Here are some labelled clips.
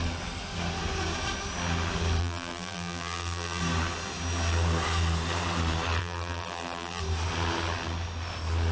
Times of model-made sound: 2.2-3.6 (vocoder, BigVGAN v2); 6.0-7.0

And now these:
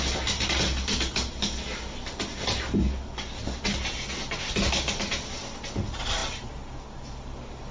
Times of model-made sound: none